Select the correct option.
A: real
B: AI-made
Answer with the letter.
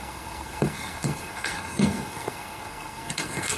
B